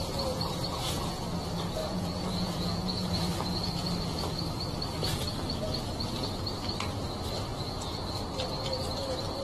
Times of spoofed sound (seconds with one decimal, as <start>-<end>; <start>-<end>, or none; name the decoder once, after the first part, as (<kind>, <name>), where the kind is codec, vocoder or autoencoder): 0.7-1.2 (vocoder, Vocos); 1.8-3.1; 7.5-8.3

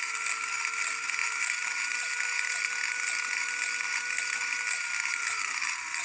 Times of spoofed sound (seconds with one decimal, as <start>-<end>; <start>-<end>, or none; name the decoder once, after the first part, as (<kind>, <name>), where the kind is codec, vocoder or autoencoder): none

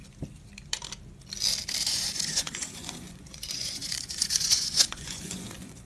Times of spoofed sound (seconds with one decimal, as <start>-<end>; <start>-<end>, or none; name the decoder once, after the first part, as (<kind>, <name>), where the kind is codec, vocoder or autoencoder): 1.8-5.9 (vocoder, Vocos)

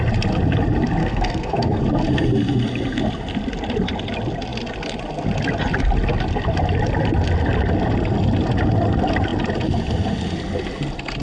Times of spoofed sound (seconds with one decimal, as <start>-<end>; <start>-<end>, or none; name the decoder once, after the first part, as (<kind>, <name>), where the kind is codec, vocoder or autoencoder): 1.0-1.8 (codec, SNAC)

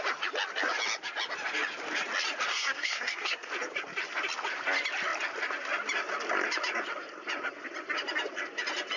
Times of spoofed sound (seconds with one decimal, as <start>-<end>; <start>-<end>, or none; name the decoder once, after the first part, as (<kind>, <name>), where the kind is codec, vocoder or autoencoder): 2.5-3.5 (codec, SNAC)